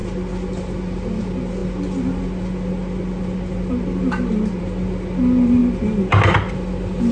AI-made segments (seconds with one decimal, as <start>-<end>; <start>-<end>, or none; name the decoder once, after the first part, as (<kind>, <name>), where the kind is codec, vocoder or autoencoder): none